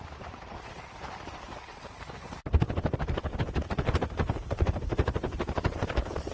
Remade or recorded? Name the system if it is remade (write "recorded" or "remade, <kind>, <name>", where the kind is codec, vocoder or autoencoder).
remade, vocoder, BigVGAN v2